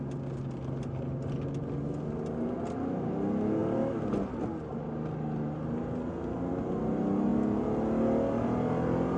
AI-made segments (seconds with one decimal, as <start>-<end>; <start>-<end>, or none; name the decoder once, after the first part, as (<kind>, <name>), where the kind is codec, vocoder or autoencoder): none